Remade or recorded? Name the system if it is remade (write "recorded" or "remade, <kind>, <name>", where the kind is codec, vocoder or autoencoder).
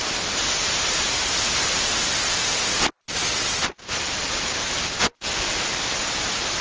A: recorded